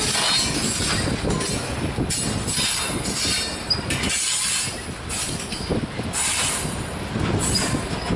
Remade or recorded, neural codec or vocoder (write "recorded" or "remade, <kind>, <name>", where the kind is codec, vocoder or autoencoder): recorded